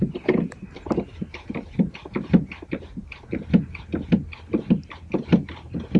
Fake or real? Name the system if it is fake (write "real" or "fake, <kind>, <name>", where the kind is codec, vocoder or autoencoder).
real